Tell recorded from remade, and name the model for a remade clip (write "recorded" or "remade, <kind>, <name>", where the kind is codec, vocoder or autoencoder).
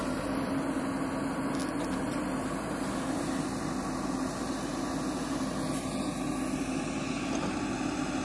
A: recorded